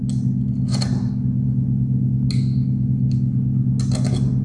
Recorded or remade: recorded